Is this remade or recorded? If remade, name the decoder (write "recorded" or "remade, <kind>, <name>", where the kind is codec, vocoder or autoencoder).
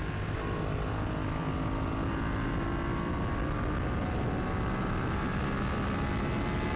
recorded